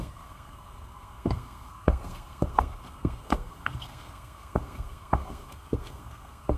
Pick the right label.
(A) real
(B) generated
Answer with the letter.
B